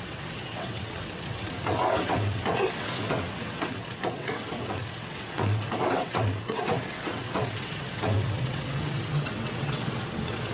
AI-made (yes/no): yes